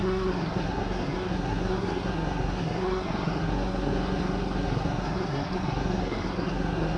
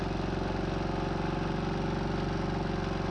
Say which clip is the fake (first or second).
first